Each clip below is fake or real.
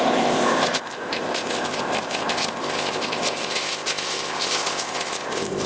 fake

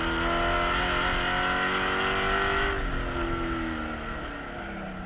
real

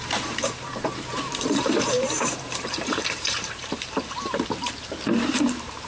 fake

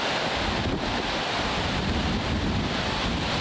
real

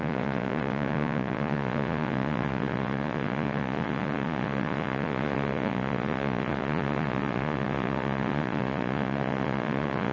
fake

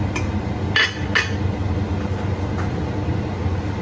real